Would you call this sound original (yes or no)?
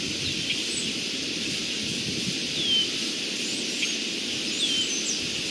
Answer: yes